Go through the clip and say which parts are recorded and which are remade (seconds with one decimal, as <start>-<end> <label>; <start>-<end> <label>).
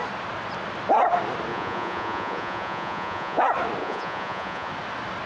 0.0-1.5 recorded; 1.5-3.4 remade; 3.4-3.8 recorded; 3.8-4.7 remade; 4.7-5.3 recorded